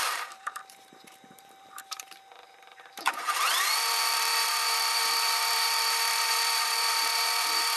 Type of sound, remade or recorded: remade